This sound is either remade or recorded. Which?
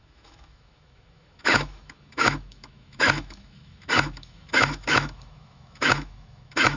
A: remade